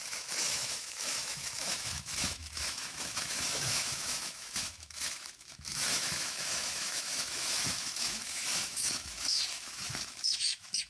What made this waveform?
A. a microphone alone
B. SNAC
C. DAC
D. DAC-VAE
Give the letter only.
D